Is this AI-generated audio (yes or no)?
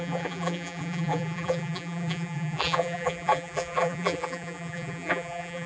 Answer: yes